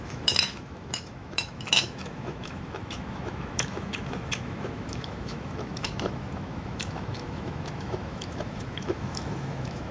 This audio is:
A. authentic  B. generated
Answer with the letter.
B